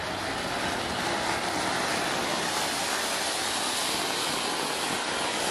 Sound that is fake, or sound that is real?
real